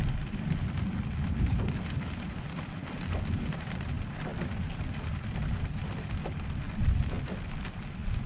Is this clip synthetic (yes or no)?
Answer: no